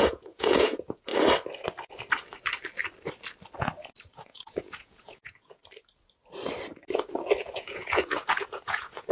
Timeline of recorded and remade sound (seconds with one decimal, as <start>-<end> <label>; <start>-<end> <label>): 0.0-1.1 remade; 1.1-4.1 recorded; 4.1-5.6 remade; 5.6-7.4 recorded; 7.4-9.1 remade